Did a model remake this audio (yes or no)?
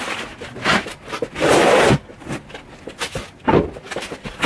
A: no